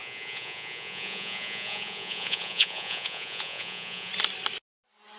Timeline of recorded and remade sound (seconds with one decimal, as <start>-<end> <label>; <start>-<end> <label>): 0.0-4.1 remade; 4.1-5.2 recorded